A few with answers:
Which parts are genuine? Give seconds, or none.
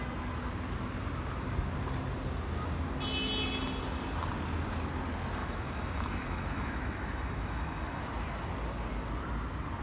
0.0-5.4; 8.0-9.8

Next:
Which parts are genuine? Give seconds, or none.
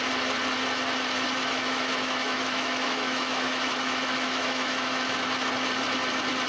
0.0-1.4; 5.3-6.5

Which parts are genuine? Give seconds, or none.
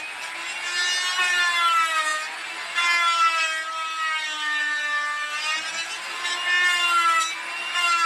0.0-8.1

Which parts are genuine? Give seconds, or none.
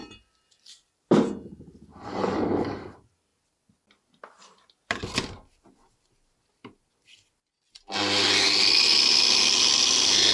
0.0-10.3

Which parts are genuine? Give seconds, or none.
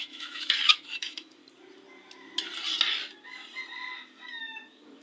1.4-4.4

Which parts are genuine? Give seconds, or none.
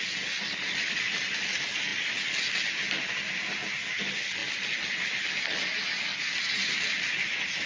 0.0-7.7